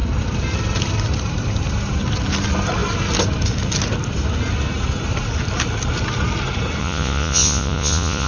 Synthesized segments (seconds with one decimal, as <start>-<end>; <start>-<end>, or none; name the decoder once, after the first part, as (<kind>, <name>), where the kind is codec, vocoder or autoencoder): 6.8-8.3 (vocoder, Vocos)